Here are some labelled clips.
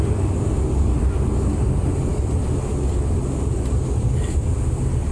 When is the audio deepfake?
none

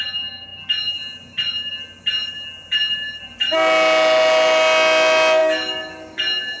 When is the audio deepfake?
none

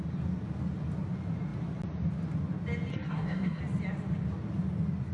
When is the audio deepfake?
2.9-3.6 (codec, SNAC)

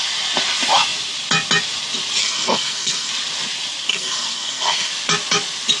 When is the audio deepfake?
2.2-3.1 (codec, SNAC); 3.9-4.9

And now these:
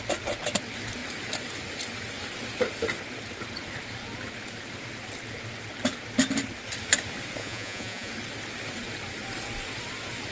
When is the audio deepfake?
7.4-8.1 (vocoder, Vocos)

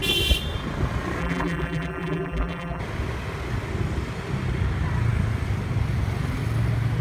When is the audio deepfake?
1.2-2.8 (vocoder, BigVGAN v2)